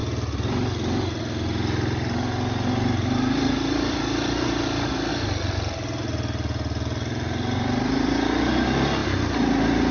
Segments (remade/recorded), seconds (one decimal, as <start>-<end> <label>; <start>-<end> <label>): 0.0-9.9 recorded